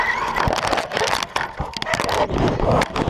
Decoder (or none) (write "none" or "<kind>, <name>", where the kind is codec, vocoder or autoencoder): none